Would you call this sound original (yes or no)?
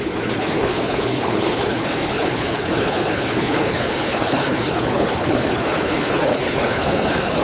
no